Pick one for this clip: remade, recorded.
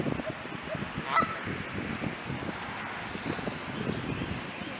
recorded